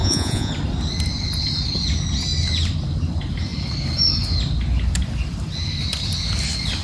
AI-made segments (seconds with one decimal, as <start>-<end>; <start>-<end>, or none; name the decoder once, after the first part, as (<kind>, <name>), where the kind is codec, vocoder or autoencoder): 0.0-0.5 (vocoder, Vocos)